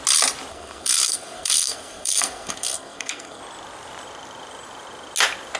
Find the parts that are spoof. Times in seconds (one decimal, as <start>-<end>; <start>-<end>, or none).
0.5-3.4